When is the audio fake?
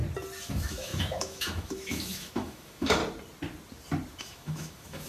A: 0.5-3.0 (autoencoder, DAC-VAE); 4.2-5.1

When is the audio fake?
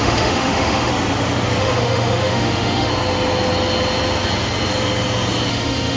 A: 0.0-0.9 (autoencoder, DAC-VAE); 1.6-2.9; 5.5-6.0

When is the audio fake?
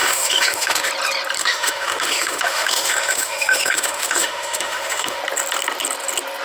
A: 0.0-0.9 (autoencoder, DAC-VAE); 1.4-5.2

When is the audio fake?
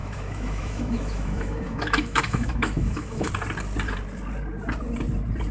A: 0.0-3.3 (autoencoder, DAC-VAE)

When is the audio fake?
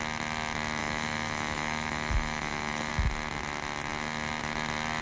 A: 0.8-2.9 (autoencoder, DAC-VAE)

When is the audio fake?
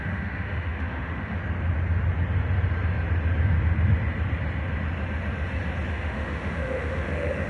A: 0.0-1.4 (autoencoder, DAC-VAE); 5.9-7.5